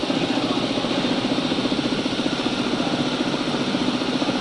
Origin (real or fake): real